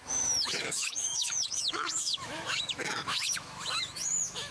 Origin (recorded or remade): remade